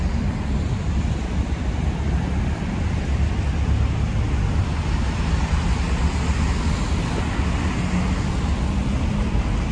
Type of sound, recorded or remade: recorded